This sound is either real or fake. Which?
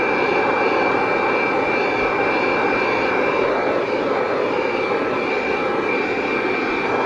real